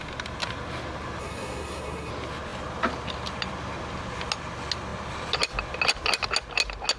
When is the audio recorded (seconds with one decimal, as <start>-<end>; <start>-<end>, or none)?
0.0-1.2; 2.1-7.0